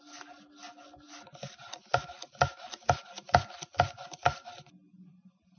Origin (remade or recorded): recorded